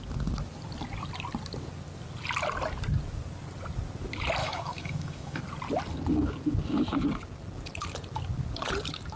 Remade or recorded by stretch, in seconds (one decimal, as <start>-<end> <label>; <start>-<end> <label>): 0.0-4.4 recorded; 4.4-5.4 remade; 5.4-9.2 recorded